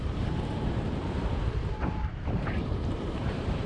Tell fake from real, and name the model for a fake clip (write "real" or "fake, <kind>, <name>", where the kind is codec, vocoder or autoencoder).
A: fake, vocoder, BigVGAN v2